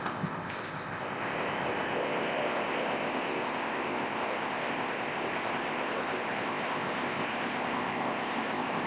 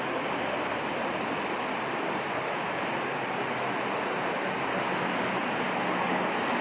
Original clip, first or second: second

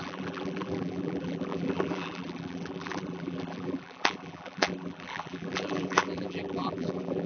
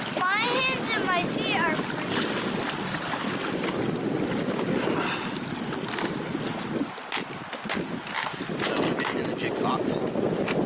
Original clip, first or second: second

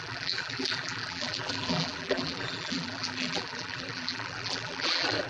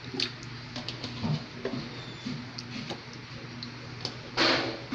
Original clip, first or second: second